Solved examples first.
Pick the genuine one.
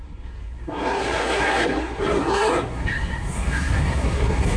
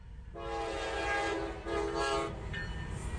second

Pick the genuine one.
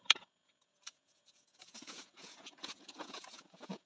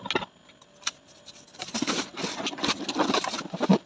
second